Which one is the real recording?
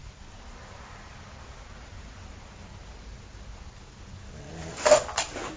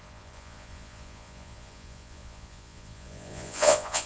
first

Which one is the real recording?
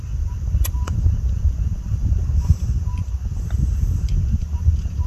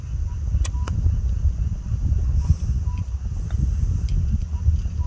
second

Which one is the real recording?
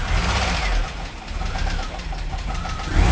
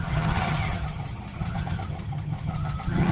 first